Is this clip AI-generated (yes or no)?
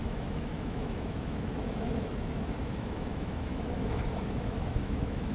yes